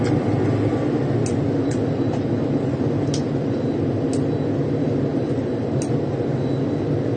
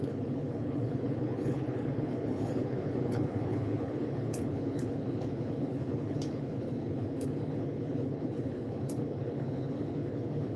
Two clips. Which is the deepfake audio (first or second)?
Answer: second